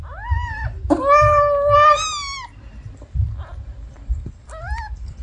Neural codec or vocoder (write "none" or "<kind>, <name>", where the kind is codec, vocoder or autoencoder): none